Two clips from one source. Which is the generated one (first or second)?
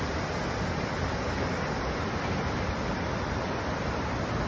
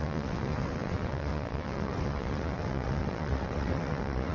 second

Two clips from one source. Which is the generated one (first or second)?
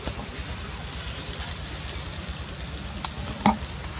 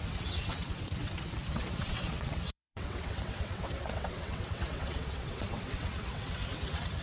second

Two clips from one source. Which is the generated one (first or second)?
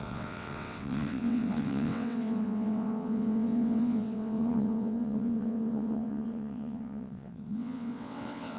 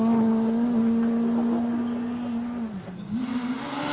first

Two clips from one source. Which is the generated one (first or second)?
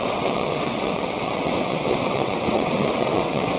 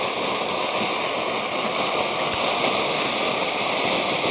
first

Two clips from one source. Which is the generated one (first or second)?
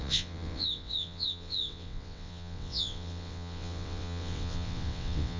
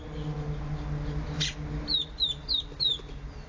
first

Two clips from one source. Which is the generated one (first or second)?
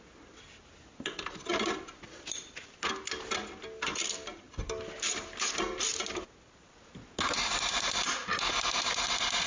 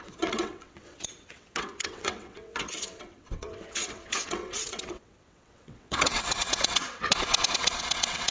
second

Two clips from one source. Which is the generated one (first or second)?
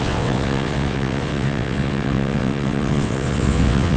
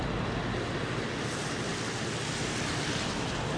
first